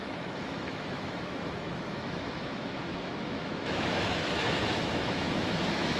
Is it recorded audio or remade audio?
remade